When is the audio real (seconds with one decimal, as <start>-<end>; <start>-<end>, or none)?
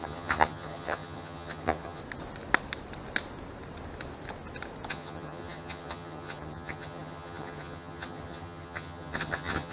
2.0-4.9